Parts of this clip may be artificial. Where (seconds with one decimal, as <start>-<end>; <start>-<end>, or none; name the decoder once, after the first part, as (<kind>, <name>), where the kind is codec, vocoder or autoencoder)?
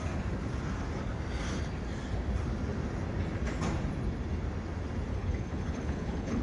5.1-6.4 (codec, HILCodec)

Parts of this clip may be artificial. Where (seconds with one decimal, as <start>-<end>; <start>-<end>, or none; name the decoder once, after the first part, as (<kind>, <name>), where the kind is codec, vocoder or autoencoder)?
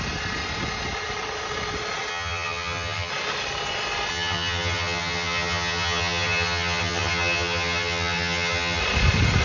2.1-3.1 (vocoder, HiFi-GAN); 4.1-8.8